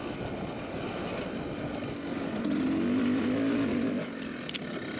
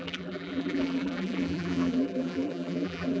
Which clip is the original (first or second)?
first